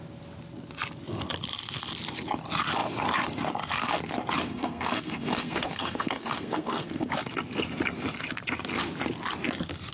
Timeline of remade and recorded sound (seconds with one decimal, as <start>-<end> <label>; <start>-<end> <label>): 0.0-4.5 recorded; 4.5-7.1 remade; 7.1-9.9 recorded